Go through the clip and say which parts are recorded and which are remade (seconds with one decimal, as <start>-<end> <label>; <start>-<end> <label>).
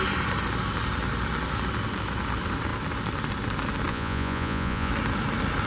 0.0-3.9 recorded; 3.9-4.9 remade; 4.9-5.7 recorded